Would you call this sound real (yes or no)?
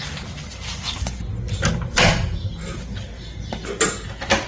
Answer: yes